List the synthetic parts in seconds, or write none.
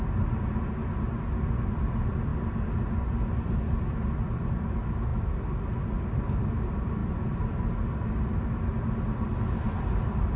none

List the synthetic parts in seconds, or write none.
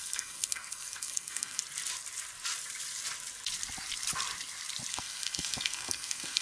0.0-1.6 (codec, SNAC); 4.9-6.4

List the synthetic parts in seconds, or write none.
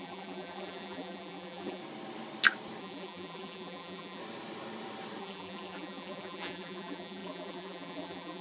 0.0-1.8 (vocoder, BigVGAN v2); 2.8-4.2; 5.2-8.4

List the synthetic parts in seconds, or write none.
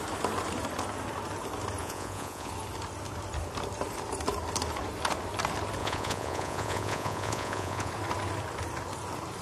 1.8-2.5 (vocoder, Vocos); 5.8-7.9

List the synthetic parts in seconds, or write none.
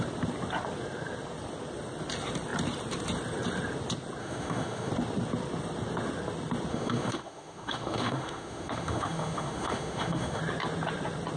4.2-4.9 (autoencoder, DAC-VAE); 6.7-10.4